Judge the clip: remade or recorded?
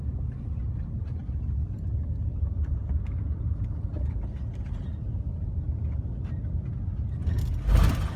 recorded